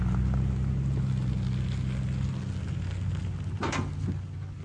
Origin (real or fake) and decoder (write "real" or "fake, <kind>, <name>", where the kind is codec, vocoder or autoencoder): real